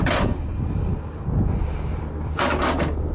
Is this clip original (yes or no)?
yes